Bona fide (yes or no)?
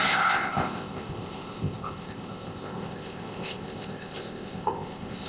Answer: no